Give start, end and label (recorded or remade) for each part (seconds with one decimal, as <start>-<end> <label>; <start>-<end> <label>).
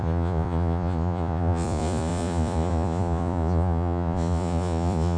0.0-5.2 remade